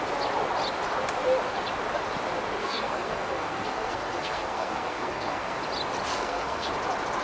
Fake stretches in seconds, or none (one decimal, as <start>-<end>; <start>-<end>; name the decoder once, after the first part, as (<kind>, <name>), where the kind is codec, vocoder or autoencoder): 2.6-5.6 (codec, SNAC); 6.1-6.7